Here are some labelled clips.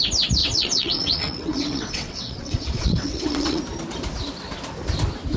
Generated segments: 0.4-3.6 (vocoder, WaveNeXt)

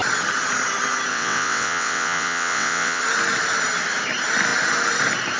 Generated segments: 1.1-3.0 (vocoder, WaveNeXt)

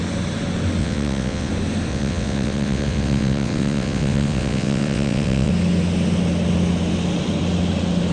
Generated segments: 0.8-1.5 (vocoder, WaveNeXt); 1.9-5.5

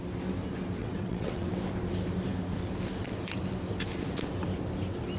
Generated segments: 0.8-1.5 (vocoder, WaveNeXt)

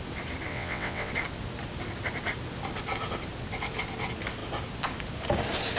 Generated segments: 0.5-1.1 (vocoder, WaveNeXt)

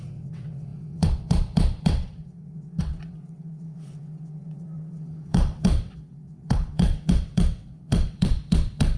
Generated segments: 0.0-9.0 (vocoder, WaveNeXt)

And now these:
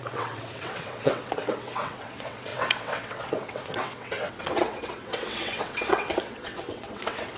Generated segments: 0.0-7.4 (vocoder, WaveNeXt)